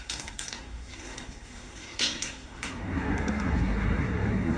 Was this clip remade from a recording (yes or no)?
yes